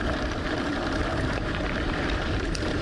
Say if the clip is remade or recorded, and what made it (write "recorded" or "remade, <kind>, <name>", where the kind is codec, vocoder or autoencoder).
remade, vocoder, BigVGAN v2